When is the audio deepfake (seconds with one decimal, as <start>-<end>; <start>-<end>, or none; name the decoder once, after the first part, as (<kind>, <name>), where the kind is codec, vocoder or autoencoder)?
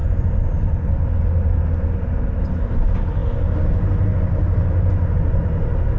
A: none